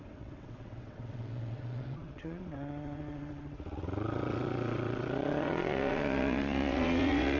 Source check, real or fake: fake